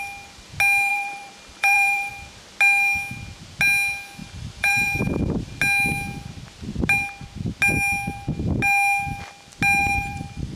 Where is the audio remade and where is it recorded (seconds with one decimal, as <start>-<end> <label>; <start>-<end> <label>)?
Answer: 0.0-0.9 recorded; 0.9-2.1 remade; 2.1-4.2 recorded; 4.2-5.0 remade; 5.0-9.8 recorded; 9.8-10.6 remade